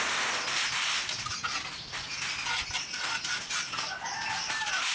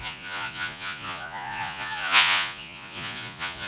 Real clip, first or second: first